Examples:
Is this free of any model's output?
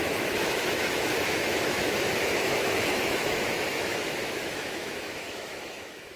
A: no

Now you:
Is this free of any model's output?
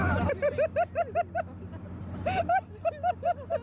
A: yes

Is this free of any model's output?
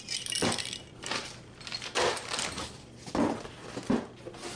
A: yes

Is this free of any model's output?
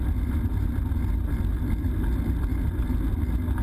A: yes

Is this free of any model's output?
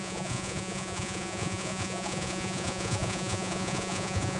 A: no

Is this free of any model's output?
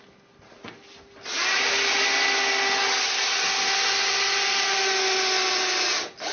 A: yes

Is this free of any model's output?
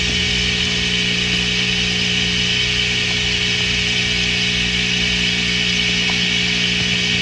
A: yes